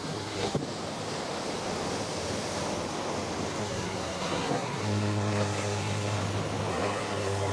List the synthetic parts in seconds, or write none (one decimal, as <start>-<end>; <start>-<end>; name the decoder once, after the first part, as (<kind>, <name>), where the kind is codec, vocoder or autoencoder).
0.0-0.6 (codec, SNAC); 3.6-6.2; 6.7-7.5